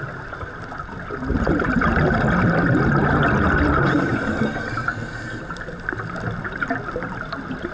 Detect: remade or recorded recorded